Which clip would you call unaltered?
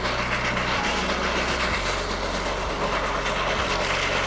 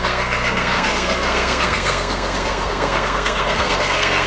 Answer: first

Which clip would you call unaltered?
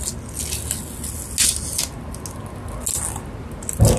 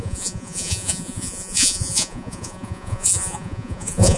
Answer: first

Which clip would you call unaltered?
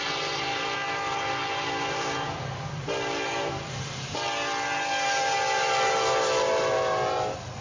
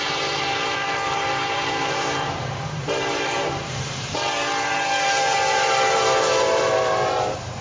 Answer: first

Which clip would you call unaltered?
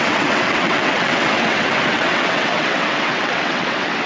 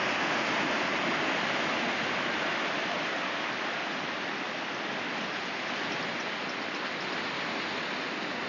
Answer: second